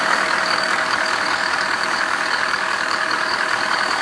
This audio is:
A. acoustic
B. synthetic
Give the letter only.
B